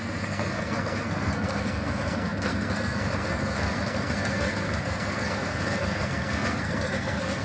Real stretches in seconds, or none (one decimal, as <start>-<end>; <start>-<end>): none

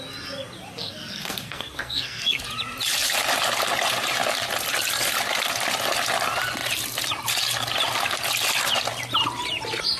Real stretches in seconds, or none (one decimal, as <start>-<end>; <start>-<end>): 0.0-0.7; 2.4-10.0

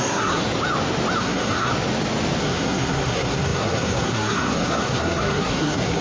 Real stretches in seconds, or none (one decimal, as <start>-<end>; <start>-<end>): 0.4-1.2; 1.7-2.4

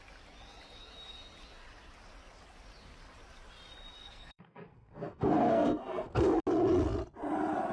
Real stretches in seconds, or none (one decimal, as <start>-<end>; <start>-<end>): 0.0-4.0; 6.4-7.7